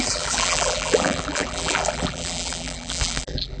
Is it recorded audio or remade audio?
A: remade